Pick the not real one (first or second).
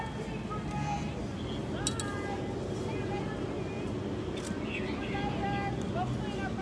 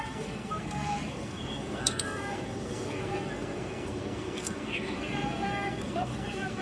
second